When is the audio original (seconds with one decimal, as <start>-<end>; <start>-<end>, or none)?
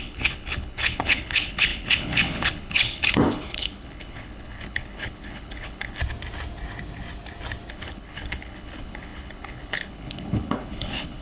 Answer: 6.0-7.7